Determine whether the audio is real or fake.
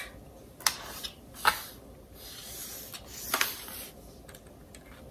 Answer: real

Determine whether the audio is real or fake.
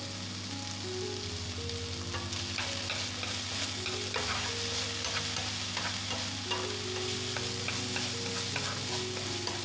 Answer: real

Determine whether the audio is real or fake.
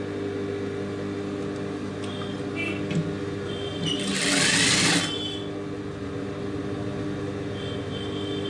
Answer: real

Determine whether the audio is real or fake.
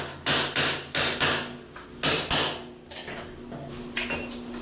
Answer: real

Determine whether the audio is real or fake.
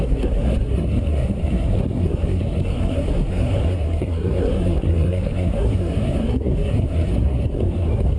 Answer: fake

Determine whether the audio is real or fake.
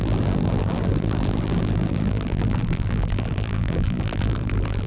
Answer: fake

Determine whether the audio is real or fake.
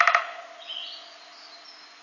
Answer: real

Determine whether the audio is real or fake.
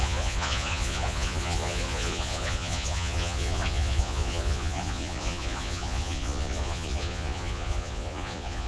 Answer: fake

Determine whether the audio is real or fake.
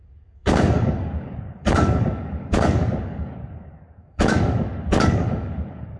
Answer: fake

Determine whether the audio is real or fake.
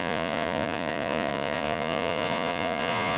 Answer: fake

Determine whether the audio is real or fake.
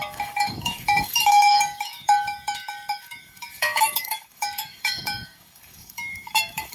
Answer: fake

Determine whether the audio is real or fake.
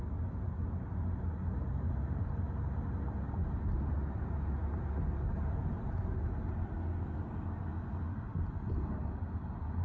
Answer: real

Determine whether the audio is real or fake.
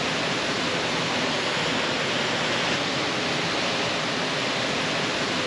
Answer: real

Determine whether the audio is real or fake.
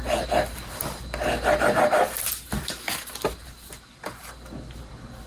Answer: real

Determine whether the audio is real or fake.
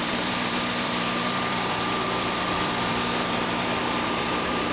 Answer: fake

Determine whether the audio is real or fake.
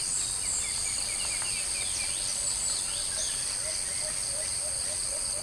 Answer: real